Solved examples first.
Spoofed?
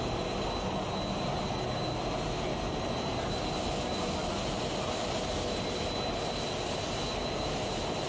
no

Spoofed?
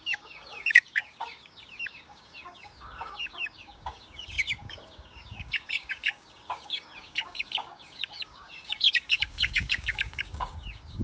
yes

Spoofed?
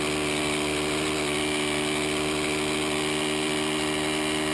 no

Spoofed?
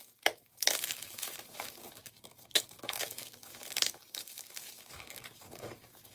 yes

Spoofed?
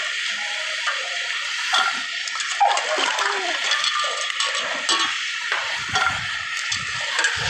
no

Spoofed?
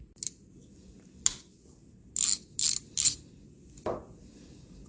no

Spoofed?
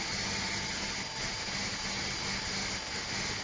no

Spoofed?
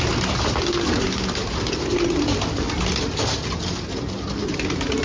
no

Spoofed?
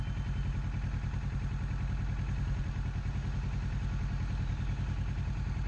no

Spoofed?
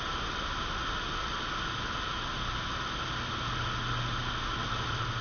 no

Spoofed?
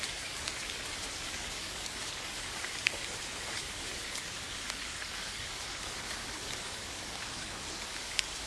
yes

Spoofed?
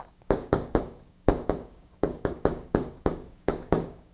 yes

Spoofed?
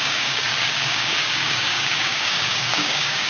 yes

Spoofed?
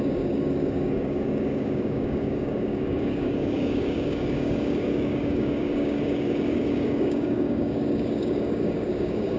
yes